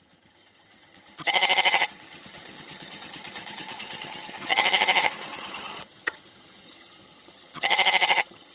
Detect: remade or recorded remade